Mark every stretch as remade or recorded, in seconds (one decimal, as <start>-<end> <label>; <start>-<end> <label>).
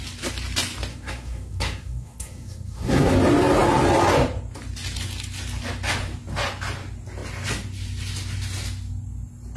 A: 0.0-0.9 recorded; 0.9-3.1 remade; 3.1-9.6 recorded